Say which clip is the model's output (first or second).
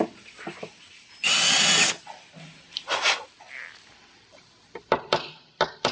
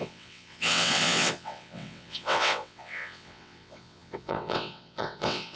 second